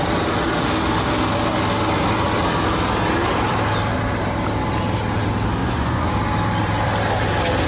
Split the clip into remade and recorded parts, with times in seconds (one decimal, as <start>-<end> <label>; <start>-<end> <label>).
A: 0.0-5.6 recorded; 5.6-6.1 remade; 6.1-7.7 recorded